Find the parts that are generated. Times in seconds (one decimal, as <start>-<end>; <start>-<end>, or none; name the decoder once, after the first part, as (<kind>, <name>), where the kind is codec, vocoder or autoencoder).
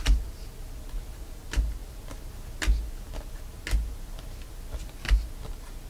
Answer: none